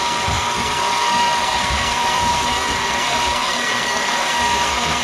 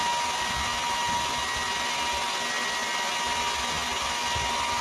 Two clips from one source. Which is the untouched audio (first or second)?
second